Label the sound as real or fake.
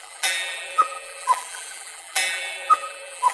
fake